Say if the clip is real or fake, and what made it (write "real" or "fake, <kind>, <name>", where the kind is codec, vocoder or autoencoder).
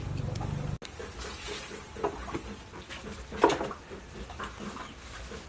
real